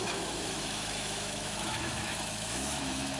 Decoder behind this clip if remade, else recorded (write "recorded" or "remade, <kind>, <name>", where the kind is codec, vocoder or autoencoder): remade, autoencoder, DAC-VAE